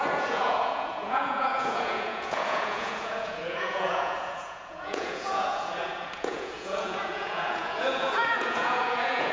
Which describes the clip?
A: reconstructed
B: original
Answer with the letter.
A